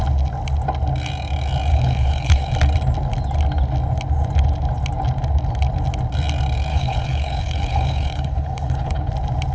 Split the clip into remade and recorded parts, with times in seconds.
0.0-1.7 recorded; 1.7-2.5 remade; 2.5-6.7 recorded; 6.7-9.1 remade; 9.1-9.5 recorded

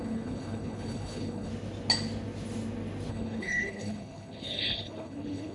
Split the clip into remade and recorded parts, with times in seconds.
0.0-1.5 remade; 1.5-3.1 recorded; 3.1-5.5 remade

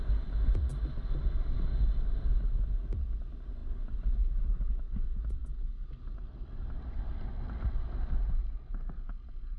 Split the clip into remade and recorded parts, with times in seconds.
0.0-0.7 recorded; 0.7-1.7 remade; 1.7-3.6 recorded; 3.6-4.4 remade; 4.4-5.4 recorded; 5.4-6.8 remade; 6.8-9.6 recorded

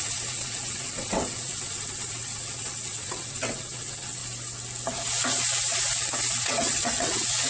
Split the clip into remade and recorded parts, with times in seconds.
0.0-4.2 remade; 4.2-6.4 recorded; 6.4-7.5 remade

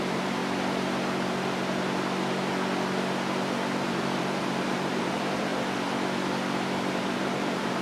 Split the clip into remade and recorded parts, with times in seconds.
0.0-0.4 remade; 0.4-3.8 recorded; 3.8-5.5 remade; 5.5-7.0 recorded; 7.0-7.8 remade